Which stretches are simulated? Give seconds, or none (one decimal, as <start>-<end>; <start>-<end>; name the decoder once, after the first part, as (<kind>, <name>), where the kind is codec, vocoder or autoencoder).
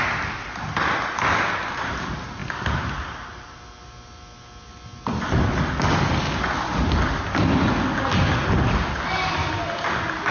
none